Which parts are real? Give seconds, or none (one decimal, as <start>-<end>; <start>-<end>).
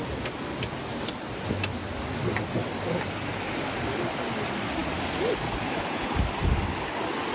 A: 0.0-7.3